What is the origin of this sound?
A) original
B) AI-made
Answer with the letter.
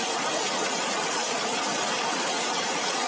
B